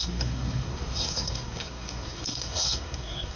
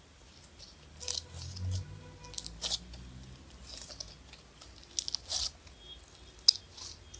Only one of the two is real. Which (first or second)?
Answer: second